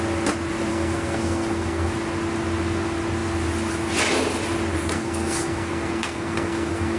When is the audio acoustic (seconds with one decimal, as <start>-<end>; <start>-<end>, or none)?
0.0-0.7; 1.9-4.7